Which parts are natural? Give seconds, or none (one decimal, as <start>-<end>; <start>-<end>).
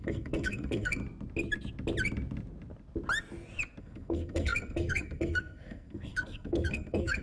1.0-3.8